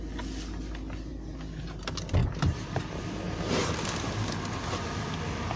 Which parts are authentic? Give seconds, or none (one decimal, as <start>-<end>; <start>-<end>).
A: 0.0-2.2; 3.4-5.6